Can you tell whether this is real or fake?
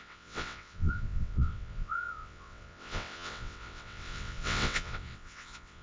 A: fake